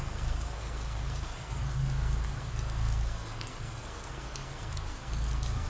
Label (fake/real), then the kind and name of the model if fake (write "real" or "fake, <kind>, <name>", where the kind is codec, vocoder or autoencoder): fake, codec, SNAC